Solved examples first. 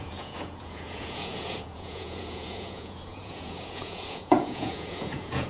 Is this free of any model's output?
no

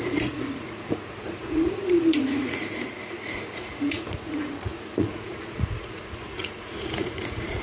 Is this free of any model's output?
no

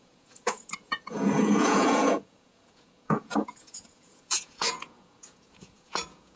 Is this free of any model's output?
no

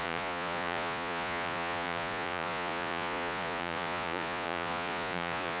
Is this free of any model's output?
no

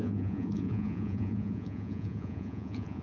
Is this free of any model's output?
no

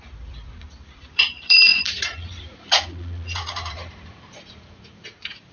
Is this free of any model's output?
no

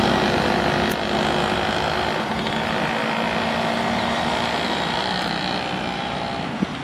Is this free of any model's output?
yes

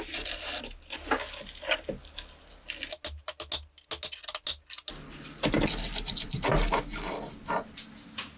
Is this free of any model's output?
yes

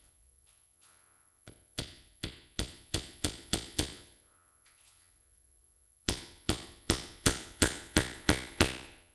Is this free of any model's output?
no